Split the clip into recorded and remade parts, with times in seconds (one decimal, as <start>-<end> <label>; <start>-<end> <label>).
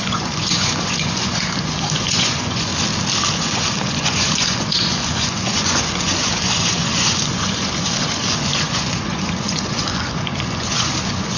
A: 0.0-2.7 remade; 2.7-3.3 recorded; 3.3-11.4 remade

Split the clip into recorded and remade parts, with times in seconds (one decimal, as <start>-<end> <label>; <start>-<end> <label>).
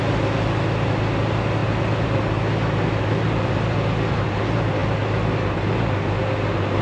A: 0.0-6.8 recorded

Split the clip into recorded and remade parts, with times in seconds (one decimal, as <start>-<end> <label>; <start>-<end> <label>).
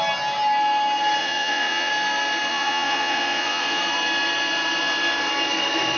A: 0.0-1.2 recorded; 1.2-1.9 remade; 1.9-2.5 recorded; 2.5-3.8 remade; 3.8-6.0 recorded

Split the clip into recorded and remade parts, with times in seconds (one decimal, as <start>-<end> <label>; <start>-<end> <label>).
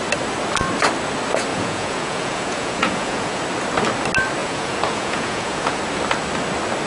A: 0.0-1.5 recorded; 1.5-3.4 remade; 3.4-4.4 recorded; 4.4-5.8 remade; 5.8-6.9 recorded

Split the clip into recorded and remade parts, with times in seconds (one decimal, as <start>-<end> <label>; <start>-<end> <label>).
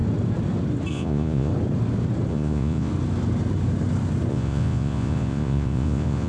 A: 0.0-0.9 recorded; 0.9-1.5 remade; 1.5-2.3 recorded; 2.3-2.9 remade; 2.9-4.3 recorded; 4.3-6.3 remade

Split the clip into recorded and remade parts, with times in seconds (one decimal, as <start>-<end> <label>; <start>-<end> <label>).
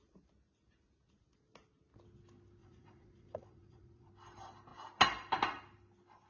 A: 0.0-2.6 recorded; 2.6-4.1 remade; 4.1-6.3 recorded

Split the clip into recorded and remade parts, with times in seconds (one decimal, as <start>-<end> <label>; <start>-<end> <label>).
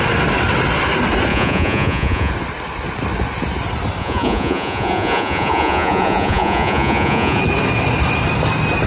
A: 0.0-1.3 recorded; 1.3-2.3 remade; 2.3-4.0 recorded; 4.0-7.4 remade; 7.4-8.9 recorded